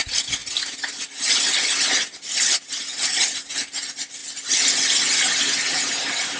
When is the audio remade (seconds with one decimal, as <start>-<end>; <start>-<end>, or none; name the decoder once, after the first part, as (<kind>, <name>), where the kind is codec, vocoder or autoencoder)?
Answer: none